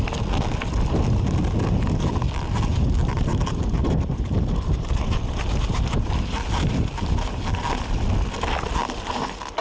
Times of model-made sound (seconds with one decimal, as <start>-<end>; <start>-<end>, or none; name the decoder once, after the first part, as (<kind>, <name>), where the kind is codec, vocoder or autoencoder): 2.7-7.7 (vocoder, BigVGAN v2)